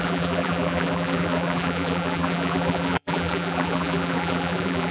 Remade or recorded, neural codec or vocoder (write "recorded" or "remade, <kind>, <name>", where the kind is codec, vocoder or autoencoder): remade, vocoder, BigVGAN v2